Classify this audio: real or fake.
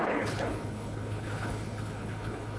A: fake